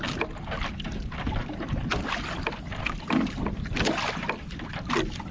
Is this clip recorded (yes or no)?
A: yes